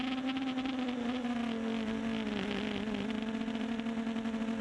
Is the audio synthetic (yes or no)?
no